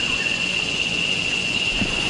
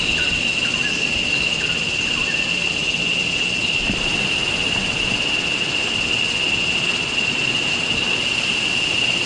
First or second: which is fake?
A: first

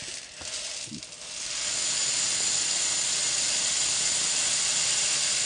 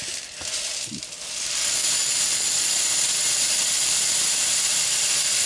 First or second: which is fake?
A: second